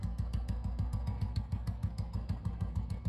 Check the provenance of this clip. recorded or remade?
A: remade